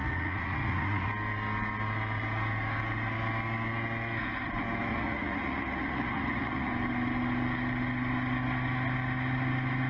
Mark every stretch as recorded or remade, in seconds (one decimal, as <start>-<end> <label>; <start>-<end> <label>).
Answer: 0.0-1.1 remade; 1.1-4.9 recorded; 4.9-6.7 remade; 6.7-9.9 recorded